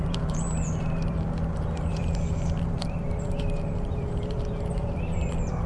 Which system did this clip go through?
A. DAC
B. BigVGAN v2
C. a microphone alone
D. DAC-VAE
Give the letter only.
B